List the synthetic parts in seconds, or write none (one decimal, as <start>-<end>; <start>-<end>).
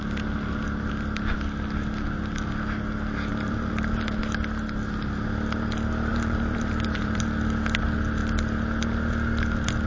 3.3-4.2; 6.1-7.2